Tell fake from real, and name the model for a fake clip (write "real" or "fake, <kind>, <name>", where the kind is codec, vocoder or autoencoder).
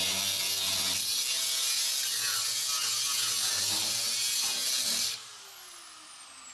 real